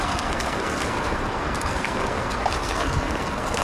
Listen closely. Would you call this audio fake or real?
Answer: fake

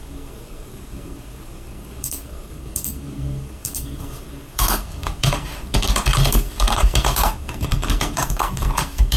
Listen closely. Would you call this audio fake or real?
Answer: fake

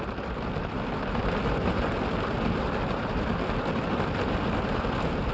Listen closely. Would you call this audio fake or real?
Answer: fake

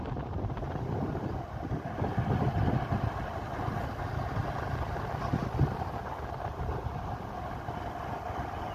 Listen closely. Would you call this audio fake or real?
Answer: real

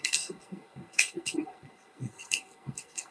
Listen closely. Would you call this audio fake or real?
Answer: fake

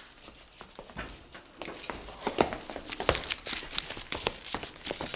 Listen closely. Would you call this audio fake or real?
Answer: real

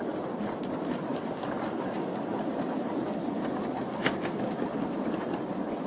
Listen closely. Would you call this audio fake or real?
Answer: real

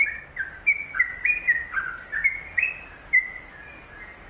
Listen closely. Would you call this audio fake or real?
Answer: real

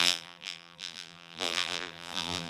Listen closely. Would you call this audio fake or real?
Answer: fake